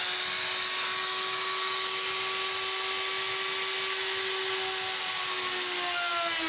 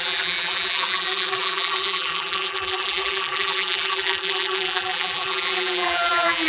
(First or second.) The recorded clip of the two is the first